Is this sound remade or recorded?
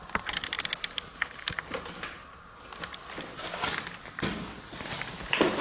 recorded